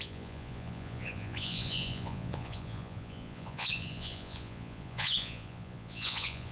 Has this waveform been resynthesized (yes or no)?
yes